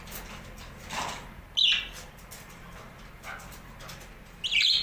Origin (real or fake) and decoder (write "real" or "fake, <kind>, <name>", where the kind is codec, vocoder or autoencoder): real